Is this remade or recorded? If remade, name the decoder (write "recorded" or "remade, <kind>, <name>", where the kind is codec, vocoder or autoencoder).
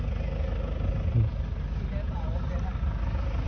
recorded